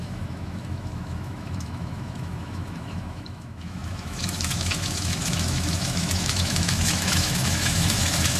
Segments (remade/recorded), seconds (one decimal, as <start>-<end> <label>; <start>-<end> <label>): 0.0-8.4 remade